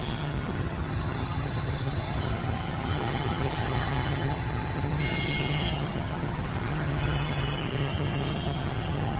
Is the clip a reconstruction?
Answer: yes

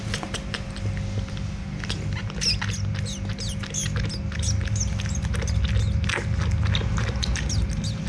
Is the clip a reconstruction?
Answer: no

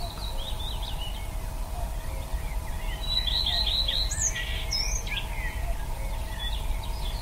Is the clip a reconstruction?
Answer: no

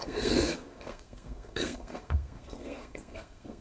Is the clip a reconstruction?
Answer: yes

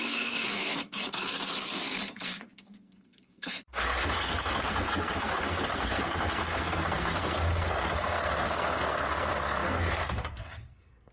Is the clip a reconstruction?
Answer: yes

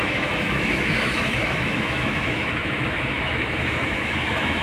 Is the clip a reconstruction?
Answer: yes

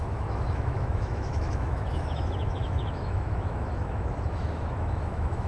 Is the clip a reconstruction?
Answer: yes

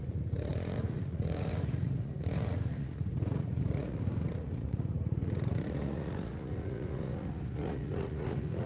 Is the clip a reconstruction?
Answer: yes